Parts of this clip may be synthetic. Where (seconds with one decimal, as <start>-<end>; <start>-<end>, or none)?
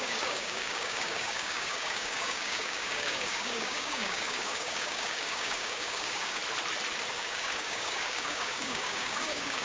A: 0.0-6.4; 7.1-9.6